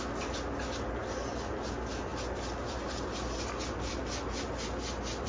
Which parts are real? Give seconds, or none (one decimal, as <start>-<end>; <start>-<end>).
0.0-5.3